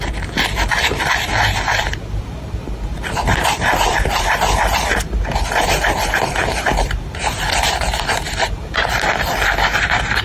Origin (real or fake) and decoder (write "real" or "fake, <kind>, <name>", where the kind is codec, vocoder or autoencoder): fake, vocoder, BigVGAN v2